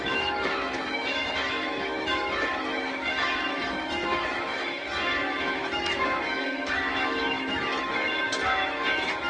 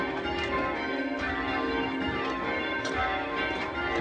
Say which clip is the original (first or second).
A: second